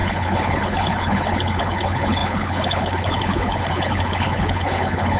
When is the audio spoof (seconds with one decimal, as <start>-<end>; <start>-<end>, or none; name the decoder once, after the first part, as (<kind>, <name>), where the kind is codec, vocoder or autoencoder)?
0.0-5.2 (codec, HILCodec)